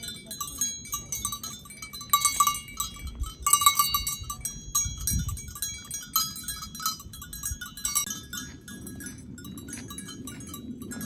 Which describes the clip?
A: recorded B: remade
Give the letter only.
A